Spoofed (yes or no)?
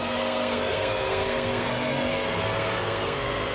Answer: yes